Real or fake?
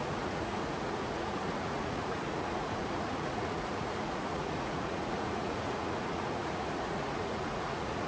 fake